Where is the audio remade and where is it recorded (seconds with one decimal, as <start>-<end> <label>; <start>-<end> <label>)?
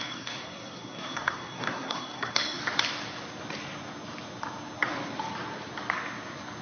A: 0.0-2.6 remade; 2.6-6.6 recorded